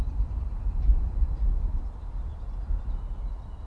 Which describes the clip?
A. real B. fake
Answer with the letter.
A